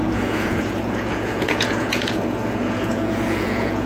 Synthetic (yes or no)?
yes